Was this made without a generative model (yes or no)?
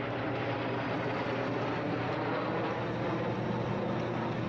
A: yes